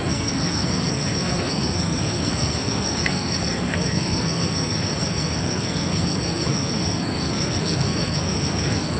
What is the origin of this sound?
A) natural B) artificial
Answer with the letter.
B